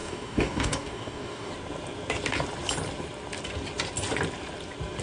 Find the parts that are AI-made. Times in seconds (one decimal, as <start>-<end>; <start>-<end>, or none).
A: 0.0-1.5